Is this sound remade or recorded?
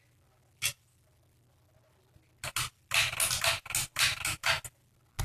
recorded